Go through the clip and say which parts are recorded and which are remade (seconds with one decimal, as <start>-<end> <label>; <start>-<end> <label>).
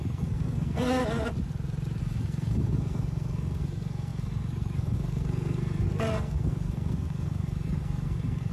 0.0-1.0 remade; 1.0-2.0 recorded; 2.0-8.5 remade